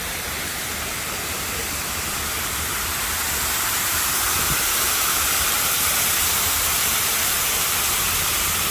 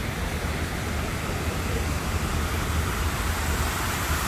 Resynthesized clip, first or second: first